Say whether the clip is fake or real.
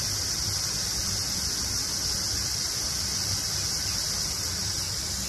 real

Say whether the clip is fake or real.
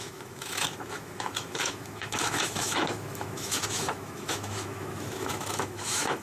fake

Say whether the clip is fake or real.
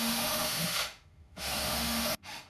fake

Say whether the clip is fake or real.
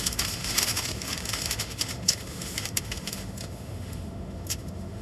fake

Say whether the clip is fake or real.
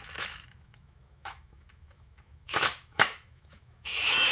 fake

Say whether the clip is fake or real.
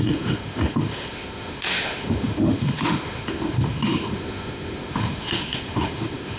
fake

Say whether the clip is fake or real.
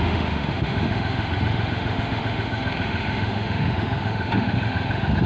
fake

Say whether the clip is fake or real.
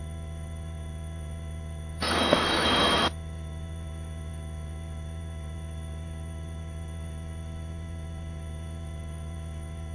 fake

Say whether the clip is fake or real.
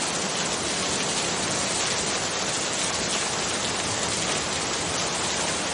real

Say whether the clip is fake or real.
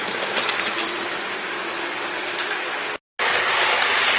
real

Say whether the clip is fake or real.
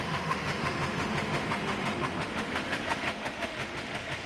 fake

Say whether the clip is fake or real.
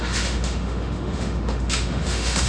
fake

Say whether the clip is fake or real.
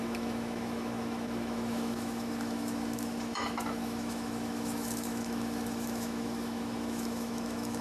fake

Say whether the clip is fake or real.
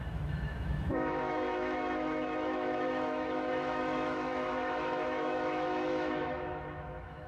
fake